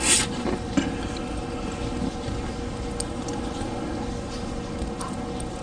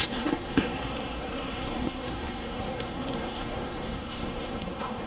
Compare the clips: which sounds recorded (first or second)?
first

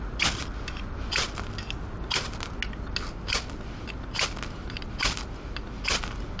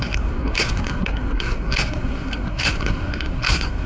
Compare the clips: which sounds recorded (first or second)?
first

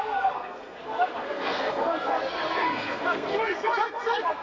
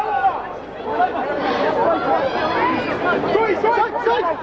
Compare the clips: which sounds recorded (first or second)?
second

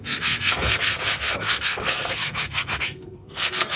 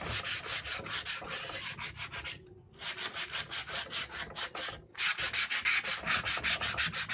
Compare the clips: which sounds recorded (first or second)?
second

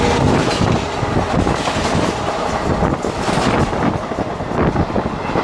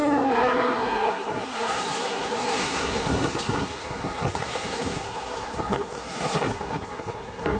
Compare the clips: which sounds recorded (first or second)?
first